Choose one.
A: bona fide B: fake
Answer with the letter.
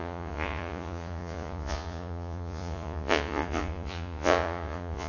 B